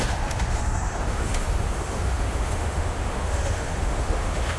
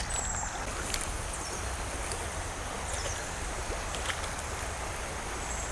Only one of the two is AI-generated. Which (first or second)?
first